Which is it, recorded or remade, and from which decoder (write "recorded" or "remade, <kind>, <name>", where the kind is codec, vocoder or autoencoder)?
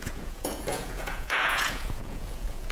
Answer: remade, vocoder, Vocos